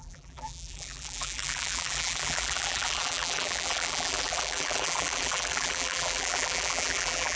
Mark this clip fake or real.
fake